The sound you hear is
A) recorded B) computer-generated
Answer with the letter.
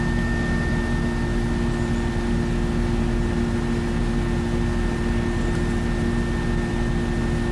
A